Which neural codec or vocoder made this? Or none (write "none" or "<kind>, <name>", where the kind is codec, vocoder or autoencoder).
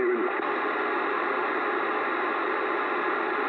none